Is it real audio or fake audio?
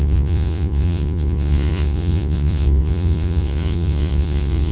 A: fake